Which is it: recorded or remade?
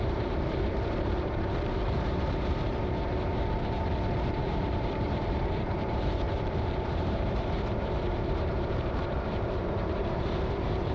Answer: remade